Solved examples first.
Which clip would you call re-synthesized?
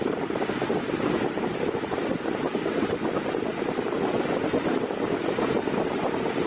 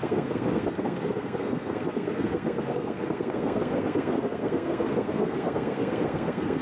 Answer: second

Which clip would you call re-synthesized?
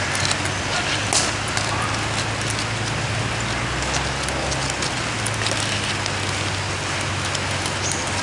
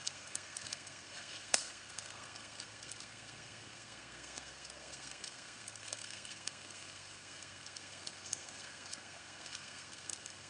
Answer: second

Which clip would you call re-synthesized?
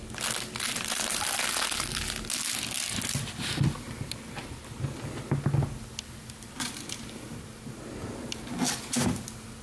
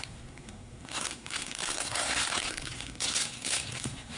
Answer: second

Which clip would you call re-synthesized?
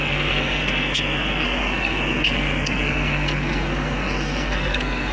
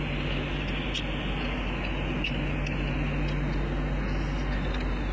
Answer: first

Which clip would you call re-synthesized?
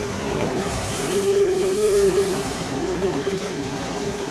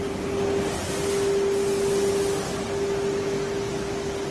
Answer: first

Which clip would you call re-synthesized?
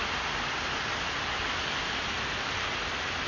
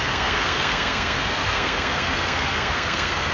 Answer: second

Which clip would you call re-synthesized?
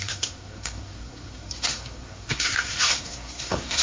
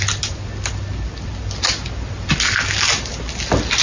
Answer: first